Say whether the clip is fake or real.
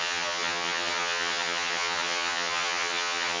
fake